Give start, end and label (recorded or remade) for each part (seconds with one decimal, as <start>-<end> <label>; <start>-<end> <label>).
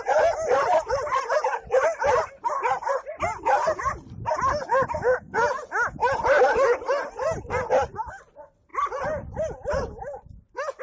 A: 0.0-10.8 recorded